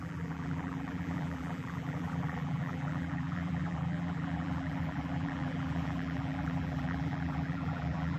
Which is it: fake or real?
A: fake